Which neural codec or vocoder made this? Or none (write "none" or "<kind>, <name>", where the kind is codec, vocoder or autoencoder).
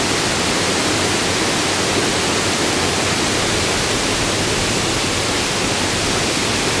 none